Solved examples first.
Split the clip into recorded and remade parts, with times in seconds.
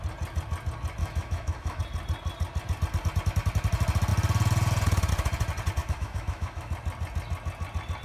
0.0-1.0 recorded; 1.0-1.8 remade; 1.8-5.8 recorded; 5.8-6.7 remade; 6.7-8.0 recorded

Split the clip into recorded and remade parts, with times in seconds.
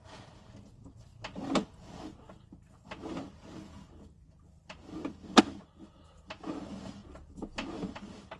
0.0-8.4 recorded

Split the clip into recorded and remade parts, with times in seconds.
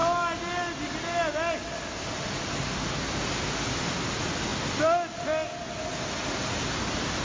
0.0-7.2 recorded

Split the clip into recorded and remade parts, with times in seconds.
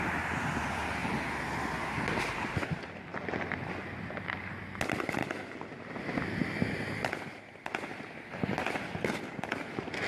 0.0-10.1 recorded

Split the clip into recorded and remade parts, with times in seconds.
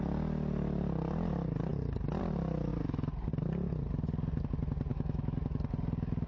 0.0-4.9 recorded; 4.9-5.4 remade; 5.4-6.3 recorded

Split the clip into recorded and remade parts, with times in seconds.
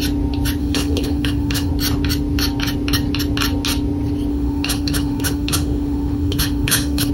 0.0-0.6 recorded; 0.6-1.7 remade; 1.7-4.3 recorded; 4.3-7.1 remade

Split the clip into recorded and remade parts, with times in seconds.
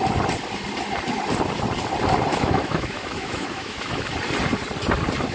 0.0-2.3 recorded; 2.3-4.1 remade; 4.1-5.3 recorded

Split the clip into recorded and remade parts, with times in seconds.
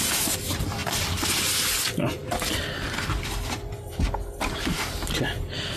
0.0-5.8 recorded